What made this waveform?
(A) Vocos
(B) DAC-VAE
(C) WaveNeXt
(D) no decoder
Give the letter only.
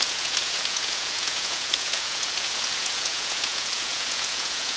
A